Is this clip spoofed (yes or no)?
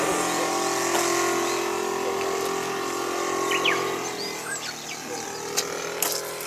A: no